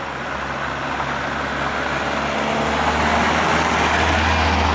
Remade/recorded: recorded